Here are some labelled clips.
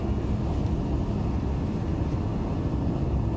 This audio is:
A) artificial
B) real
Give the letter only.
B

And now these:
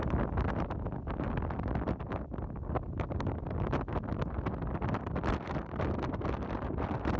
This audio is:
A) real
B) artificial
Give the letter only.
A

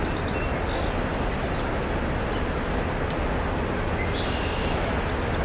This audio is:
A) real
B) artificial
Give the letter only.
A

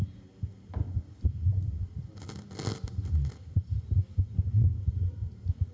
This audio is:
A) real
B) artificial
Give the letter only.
A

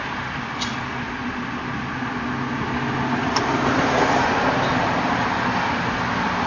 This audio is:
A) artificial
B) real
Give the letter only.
B